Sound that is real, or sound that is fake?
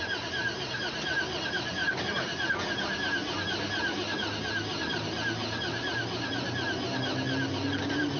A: real